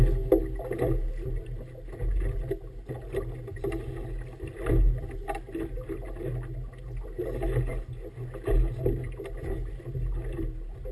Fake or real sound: real